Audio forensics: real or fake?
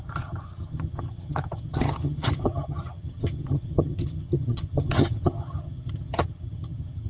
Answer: fake